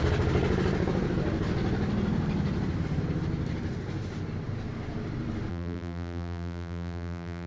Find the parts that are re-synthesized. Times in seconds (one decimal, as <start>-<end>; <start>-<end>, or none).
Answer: 5.5-7.5